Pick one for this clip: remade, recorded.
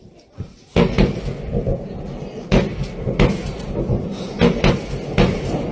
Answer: recorded